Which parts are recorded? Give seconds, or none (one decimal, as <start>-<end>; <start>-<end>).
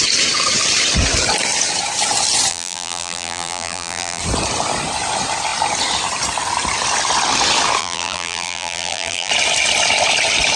0.0-2.5; 4.2-7.8; 9.3-10.6